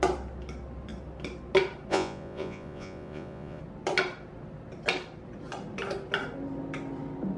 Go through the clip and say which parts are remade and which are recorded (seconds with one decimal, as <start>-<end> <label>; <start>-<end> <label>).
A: 0.0-1.9 recorded; 1.9-3.6 remade; 3.6-7.4 recorded